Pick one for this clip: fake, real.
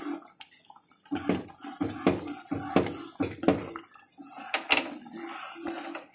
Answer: real